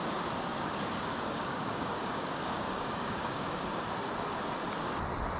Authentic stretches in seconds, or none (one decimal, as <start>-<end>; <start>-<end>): 0.0-0.5; 3.7-5.4